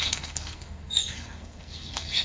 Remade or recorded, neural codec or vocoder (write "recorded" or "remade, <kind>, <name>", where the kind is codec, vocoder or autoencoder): remade, codec, SNAC